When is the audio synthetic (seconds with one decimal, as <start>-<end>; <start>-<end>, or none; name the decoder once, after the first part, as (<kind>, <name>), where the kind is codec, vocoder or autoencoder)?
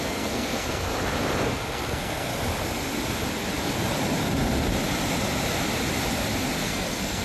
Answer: 0.0-0.9 (codec, SNAC); 1.5-2.3; 6.6-7.2